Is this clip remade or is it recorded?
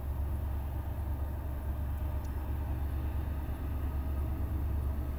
recorded